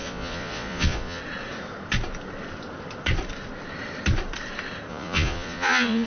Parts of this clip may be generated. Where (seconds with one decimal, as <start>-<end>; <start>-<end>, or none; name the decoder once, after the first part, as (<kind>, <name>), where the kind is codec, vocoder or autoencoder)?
0.0-1.2 (vocoder, Vocos); 4.9-6.1